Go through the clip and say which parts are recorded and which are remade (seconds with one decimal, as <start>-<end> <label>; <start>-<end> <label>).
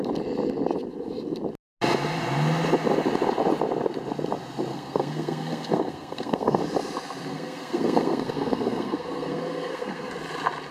0.0-4.7 recorded; 4.7-6.6 remade; 6.6-7.3 recorded; 7.3-10.1 remade; 10.1-10.7 recorded